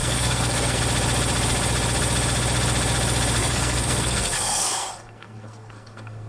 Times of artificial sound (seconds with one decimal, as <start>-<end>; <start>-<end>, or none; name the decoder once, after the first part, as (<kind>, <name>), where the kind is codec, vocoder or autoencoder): 0.0-0.8 (codec, SNAC); 3.4-6.3